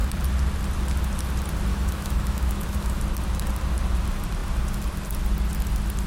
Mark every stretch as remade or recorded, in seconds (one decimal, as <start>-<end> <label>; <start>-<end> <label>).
0.0-1.7 recorded; 1.7-3.0 remade; 3.0-6.1 recorded